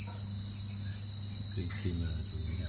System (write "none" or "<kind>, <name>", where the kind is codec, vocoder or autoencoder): none